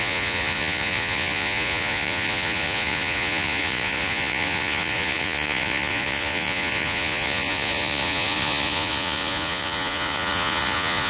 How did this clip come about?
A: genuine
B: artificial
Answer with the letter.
B